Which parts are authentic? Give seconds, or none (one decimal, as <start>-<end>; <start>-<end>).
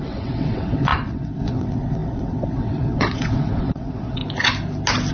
4.2-5.1